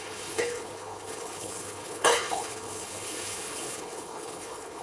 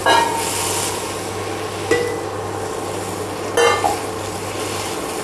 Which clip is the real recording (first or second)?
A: second